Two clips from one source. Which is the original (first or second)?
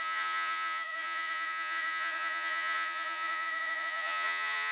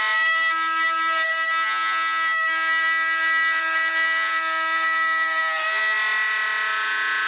second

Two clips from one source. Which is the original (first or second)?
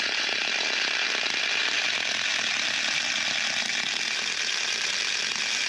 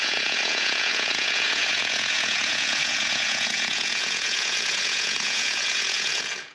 first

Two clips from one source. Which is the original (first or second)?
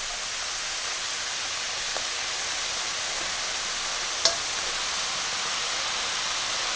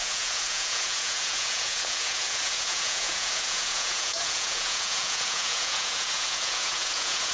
first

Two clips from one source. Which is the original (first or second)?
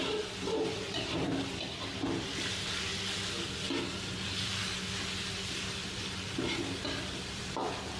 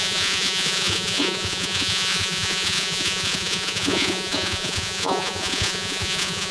first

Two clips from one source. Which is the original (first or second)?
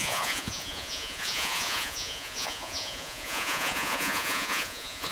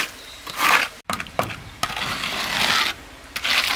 second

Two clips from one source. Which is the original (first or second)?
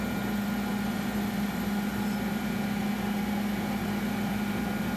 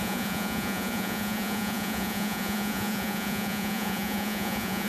first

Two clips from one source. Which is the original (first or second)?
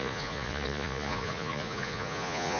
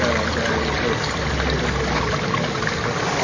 second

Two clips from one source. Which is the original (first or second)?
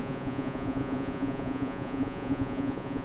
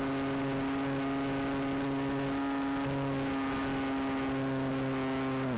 second